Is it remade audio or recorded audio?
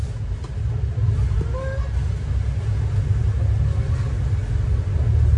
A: recorded